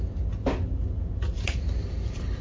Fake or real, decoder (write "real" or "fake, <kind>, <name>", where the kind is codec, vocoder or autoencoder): real